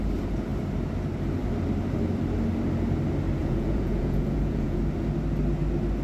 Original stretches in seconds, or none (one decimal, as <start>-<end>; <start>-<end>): 0.0-3.4; 4.8-6.0